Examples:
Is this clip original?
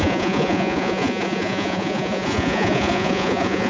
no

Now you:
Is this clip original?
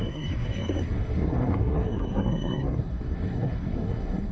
no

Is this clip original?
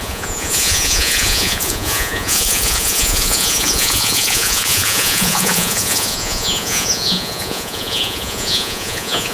no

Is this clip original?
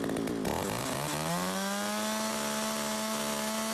yes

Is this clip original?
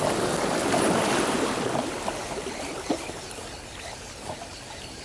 yes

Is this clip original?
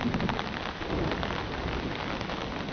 yes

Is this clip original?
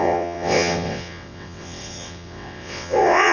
no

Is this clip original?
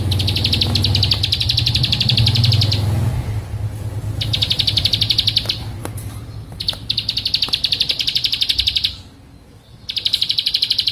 yes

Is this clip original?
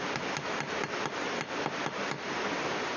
yes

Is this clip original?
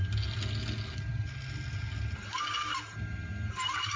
yes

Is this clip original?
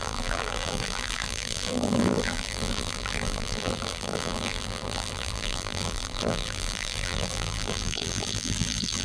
no